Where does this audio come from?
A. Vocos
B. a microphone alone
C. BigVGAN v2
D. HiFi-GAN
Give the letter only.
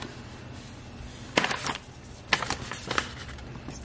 B